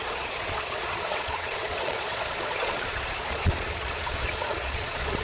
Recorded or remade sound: remade